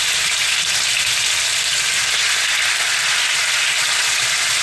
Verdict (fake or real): real